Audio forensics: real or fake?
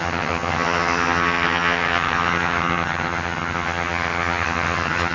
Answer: fake